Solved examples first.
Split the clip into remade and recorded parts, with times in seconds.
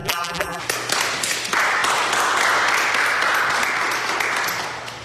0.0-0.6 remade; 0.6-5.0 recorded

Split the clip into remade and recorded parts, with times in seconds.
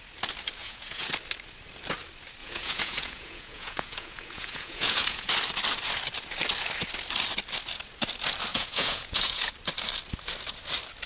0.0-0.6 recorded; 0.6-1.1 remade; 1.1-2.4 recorded; 2.4-5.3 remade; 5.3-8.5 recorded; 8.5-9.5 remade; 9.5-11.1 recorded